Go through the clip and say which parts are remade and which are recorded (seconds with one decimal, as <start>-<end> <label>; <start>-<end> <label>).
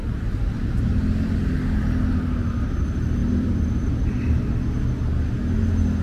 0.0-0.6 remade; 0.6-3.2 recorded; 3.2-4.5 remade; 4.5-6.0 recorded